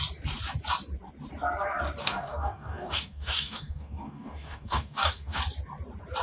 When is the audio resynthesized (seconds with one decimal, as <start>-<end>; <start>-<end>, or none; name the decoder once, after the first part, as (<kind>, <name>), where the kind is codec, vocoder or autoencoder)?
2.0-5.4 (codec, DAC)